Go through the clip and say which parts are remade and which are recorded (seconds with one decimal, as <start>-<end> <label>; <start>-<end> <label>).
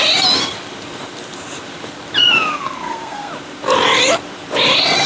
0.0-2.5 recorded; 2.5-3.3 remade; 3.3-5.1 recorded